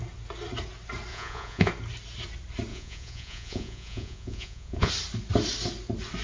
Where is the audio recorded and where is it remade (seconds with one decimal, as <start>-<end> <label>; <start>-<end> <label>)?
0.0-1.1 recorded; 1.1-1.7 remade; 1.7-2.7 recorded; 2.7-4.9 remade; 4.9-6.2 recorded